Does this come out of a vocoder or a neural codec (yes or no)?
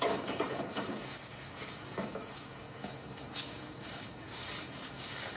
yes